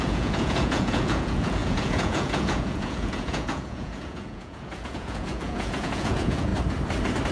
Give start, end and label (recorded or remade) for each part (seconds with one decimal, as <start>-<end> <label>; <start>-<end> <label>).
0.0-6.5 remade; 6.5-7.3 recorded